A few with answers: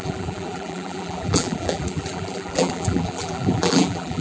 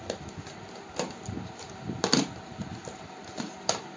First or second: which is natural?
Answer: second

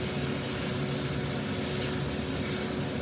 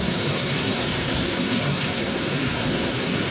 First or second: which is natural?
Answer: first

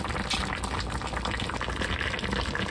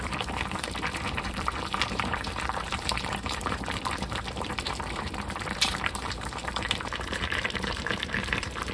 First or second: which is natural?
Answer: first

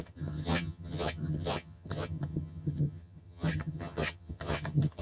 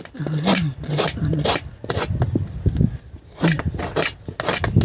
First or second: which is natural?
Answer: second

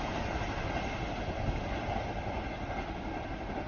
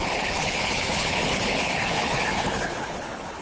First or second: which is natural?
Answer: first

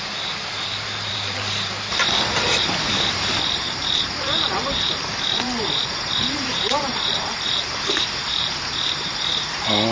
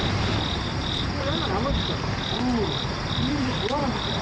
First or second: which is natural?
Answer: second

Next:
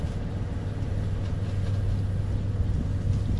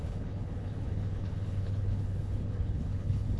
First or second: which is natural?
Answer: first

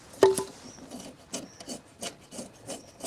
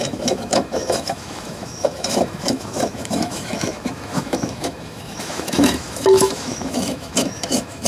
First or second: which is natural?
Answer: first